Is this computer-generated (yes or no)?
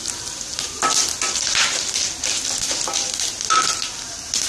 no